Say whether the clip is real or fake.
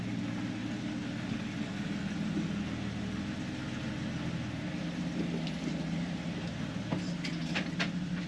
real